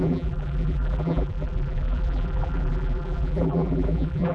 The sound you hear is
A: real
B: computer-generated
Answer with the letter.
B